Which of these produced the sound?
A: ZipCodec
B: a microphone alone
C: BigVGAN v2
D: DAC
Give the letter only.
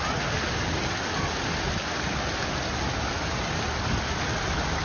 B